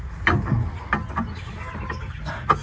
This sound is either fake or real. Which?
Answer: real